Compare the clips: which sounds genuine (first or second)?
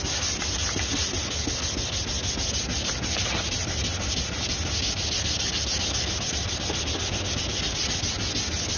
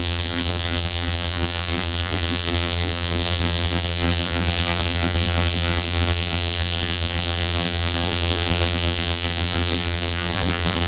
first